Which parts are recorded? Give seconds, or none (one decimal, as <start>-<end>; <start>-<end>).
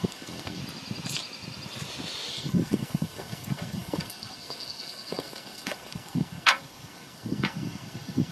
0.6-2.3